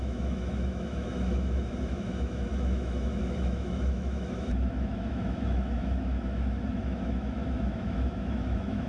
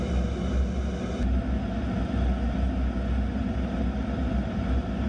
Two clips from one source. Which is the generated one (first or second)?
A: first